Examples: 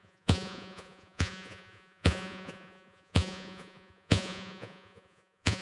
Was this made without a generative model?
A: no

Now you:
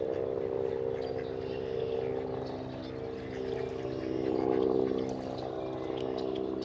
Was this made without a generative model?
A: yes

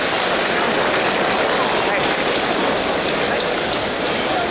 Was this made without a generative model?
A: yes